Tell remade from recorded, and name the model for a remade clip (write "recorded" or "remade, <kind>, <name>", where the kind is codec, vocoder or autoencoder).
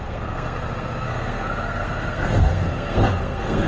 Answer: remade, codec, SNAC